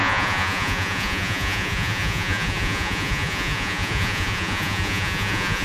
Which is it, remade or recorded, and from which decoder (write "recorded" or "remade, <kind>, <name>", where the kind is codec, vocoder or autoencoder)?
remade, vocoder, Vocos